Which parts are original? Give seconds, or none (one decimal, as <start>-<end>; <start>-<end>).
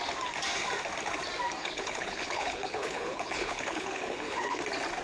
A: 0.0-1.6; 4.6-5.0